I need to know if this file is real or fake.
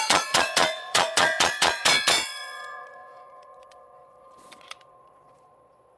fake